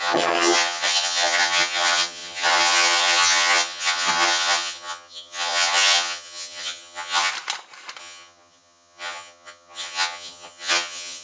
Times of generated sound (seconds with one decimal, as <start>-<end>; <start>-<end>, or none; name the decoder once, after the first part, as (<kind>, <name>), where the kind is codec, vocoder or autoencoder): 0.0-7.3 (vocoder, HiFi-GAN); 8.0-11.2